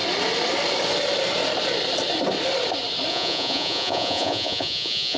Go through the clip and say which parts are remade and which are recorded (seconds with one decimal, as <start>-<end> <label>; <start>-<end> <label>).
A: 0.0-3.1 recorded; 3.1-5.2 remade